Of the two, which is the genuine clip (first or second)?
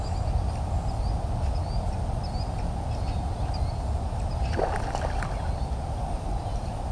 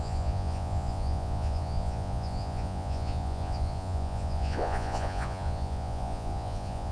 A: first